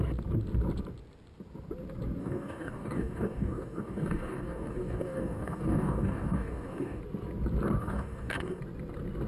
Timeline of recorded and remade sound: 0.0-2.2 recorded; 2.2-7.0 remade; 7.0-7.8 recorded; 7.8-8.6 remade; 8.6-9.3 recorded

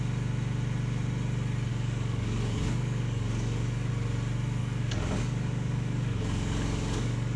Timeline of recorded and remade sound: 0.0-1.7 recorded; 1.7-3.9 remade; 3.9-4.6 recorded; 4.6-7.4 remade

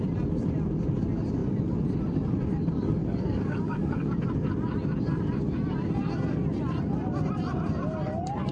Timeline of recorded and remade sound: 0.0-3.0 recorded; 3.0-4.2 remade; 4.2-8.5 recorded

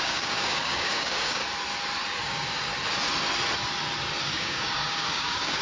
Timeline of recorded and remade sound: 0.0-1.4 remade; 1.4-2.2 recorded; 2.2-2.7 remade; 2.7-4.2 recorded; 4.2-5.6 remade

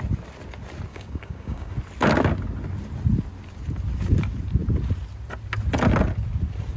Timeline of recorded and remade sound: 0.0-0.9 recorded; 0.9-1.7 remade; 1.7-6.8 recorded

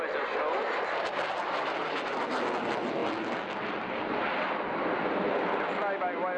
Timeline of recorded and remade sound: 0.0-6.4 recorded